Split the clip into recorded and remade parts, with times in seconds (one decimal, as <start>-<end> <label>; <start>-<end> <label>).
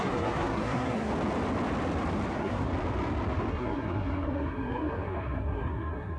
0.0-1.1 remade; 1.1-2.3 recorded; 2.3-2.7 remade; 2.7-3.5 recorded; 3.5-6.2 remade